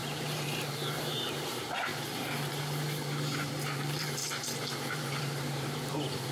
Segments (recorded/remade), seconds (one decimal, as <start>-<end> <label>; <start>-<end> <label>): 0.0-1.9 remade; 1.9-2.5 recorded; 2.5-6.3 remade